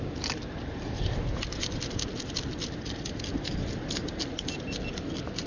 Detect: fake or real real